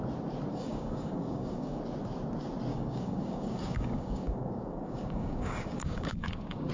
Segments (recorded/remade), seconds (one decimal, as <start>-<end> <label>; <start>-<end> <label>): 0.0-0.5 recorded; 0.5-1.8 remade; 1.8-2.7 recorded; 2.7-6.7 remade